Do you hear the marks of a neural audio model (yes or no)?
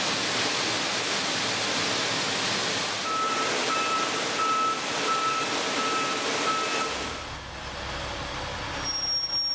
no